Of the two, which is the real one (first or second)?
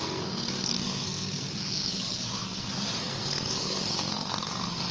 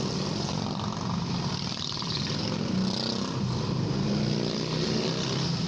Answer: second